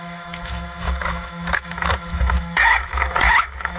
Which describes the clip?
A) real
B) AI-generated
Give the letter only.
B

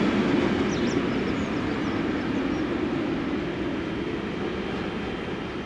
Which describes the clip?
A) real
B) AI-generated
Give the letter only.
A